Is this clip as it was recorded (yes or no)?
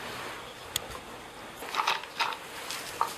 yes